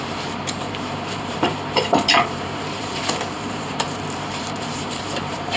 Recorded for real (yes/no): no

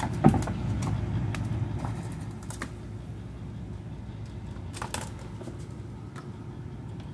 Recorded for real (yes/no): yes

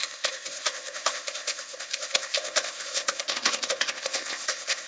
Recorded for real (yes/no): no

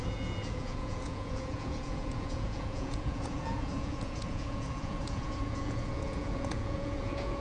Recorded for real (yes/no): no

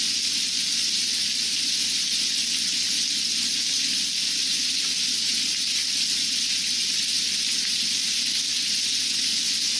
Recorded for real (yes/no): yes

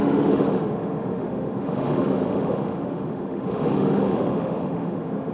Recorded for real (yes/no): no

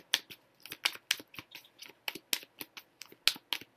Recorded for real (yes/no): yes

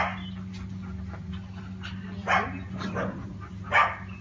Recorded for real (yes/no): yes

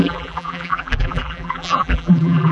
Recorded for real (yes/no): no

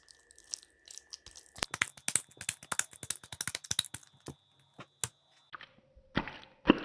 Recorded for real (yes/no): yes